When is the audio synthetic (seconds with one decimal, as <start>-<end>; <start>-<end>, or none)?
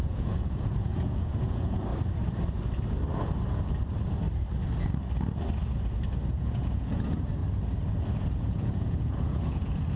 0.0-1.9; 6.3-7.4; 8.4-10.0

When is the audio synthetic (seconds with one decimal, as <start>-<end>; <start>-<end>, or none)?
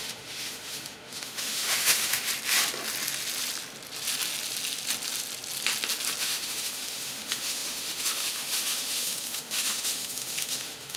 0.0-2.3; 6.2-11.0